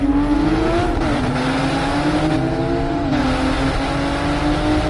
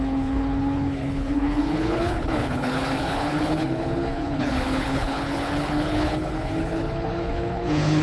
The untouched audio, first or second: first